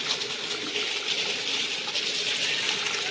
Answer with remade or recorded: recorded